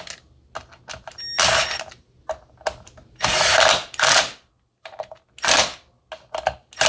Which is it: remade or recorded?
recorded